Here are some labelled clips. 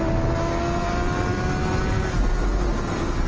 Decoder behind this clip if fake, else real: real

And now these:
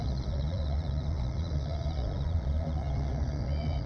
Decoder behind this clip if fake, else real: fake, vocoder, Vocos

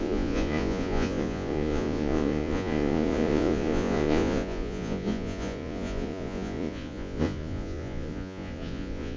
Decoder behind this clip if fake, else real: fake, vocoder, Vocos